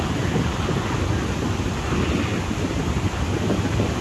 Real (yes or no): yes